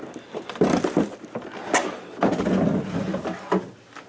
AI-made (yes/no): no